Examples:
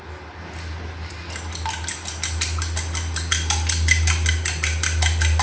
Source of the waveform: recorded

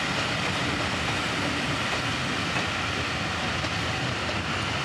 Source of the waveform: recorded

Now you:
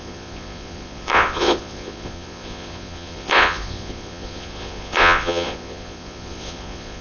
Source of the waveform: remade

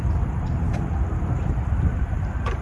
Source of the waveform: remade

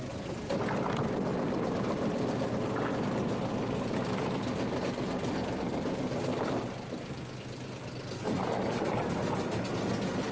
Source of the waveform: recorded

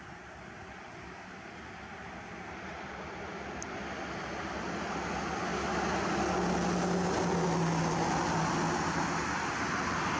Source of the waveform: recorded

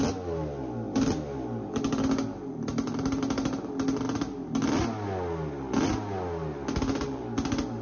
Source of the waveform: recorded